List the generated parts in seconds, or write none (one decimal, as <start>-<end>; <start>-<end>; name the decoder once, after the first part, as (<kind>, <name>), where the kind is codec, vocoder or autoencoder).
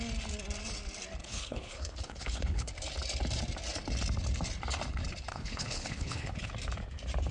1.2-2.7 (codec, HILCodec); 5.3-6.5